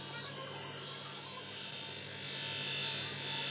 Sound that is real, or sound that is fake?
real